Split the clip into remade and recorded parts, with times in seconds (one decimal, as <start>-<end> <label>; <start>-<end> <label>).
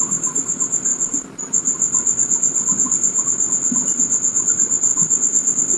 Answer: 0.0-0.9 recorded; 0.9-1.6 remade; 1.6-4.9 recorded; 4.9-5.8 remade